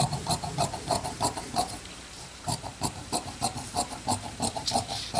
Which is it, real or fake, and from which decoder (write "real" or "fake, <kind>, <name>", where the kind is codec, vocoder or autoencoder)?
fake, vocoder, BigVGAN v2